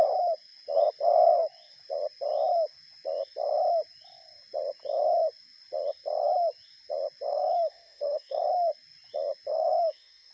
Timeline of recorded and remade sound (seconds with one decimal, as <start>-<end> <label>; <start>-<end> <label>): 0.0-7.3 recorded; 7.3-8.4 remade; 8.4-9.5 recorded; 9.5-10.3 remade